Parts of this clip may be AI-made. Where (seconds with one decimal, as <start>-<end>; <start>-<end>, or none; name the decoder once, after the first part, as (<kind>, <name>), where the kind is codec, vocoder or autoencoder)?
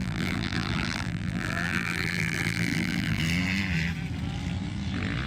0.0-3.2 (vocoder, BigVGAN v2)